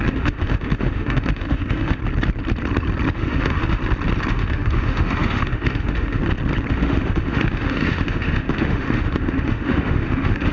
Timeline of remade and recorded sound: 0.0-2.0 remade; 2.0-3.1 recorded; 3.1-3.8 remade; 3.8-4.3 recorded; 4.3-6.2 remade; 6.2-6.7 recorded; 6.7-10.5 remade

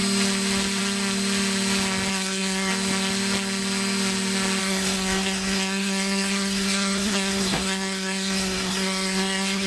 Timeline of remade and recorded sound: 0.0-2.1 recorded; 2.1-2.7 remade; 2.7-4.6 recorded; 4.6-9.7 remade

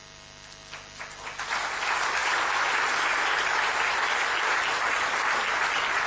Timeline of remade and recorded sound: 0.0-6.1 recorded

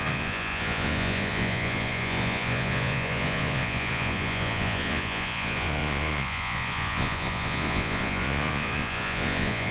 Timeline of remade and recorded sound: 0.0-9.7 remade

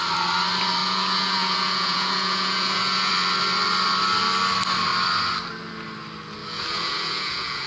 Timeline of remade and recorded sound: 0.0-0.8 recorded; 0.8-3.1 remade; 3.1-6.4 recorded; 6.4-7.7 remade